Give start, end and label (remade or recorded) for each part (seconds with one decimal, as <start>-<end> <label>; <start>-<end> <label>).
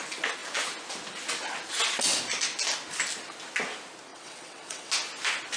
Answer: 0.0-4.1 recorded; 4.1-4.9 remade; 4.9-5.6 recorded